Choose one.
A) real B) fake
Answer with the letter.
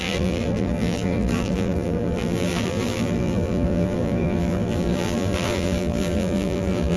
B